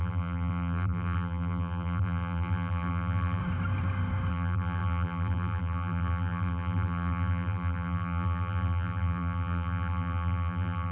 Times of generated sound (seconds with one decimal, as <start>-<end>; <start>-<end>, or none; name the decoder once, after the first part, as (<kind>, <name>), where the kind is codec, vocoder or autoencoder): 0.0-3.4 (vocoder, BigVGAN v2); 4.3-10.9